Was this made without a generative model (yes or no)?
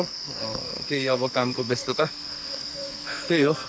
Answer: no